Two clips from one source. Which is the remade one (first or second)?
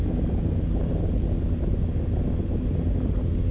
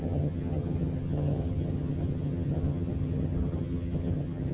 second